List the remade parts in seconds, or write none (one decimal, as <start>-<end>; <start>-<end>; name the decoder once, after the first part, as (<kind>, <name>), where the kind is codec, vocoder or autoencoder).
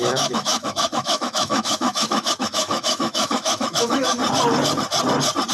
0.0-4.2 (autoencoder, DAC-VAE)